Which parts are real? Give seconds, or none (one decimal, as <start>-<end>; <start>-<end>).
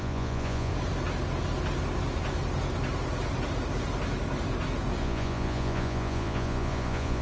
0.7-5.0